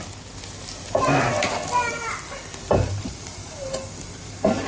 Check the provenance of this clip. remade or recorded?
recorded